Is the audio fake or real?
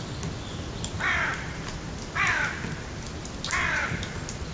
real